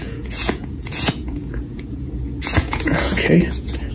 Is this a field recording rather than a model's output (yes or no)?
no